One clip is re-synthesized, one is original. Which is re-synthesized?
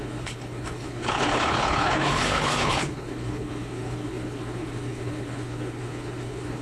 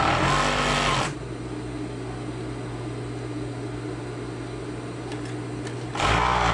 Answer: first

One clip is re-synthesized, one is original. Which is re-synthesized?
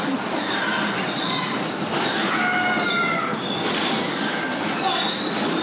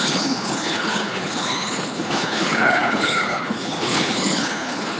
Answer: second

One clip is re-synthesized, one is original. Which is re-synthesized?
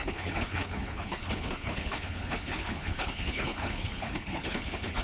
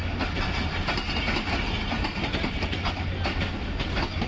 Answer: first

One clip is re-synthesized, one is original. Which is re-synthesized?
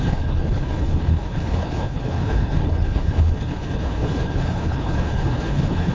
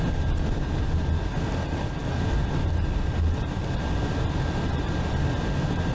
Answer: first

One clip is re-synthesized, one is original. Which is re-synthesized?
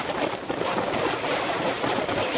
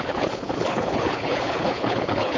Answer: second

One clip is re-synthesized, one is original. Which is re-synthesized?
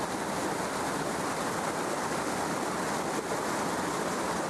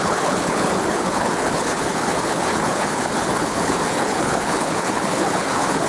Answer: second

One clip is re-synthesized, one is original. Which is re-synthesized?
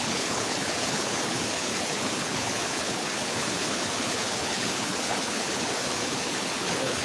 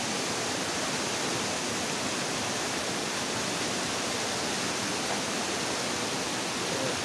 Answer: first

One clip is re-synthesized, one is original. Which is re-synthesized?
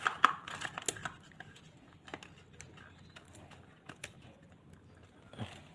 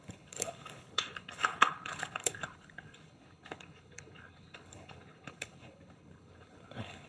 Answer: second